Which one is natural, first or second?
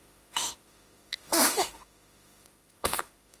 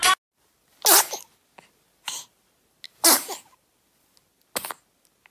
second